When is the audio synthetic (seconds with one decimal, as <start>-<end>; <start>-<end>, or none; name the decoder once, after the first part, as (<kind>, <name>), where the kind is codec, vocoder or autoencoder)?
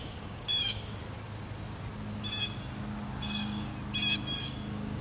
0.0-0.9 (codec, DAC); 3.2-3.7; 4.4-5.0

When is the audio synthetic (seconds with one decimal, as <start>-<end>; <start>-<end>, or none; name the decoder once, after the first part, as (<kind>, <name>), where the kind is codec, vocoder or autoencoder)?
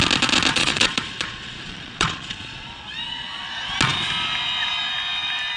0.5-3.5 (vocoder, Vocos)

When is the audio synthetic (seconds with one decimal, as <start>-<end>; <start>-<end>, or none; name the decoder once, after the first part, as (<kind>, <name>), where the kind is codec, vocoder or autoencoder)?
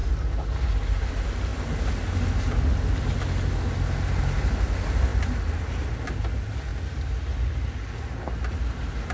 none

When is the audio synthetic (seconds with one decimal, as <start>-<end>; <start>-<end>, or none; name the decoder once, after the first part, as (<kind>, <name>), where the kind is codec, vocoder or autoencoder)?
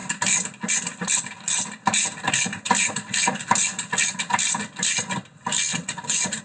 5.7-6.4 (vocoder, Vocos)